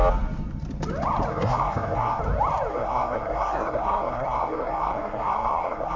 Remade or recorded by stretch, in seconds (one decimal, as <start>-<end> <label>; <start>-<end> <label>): 0.0-1.3 recorded; 1.3-2.2 remade; 2.2-2.7 recorded; 2.7-6.0 remade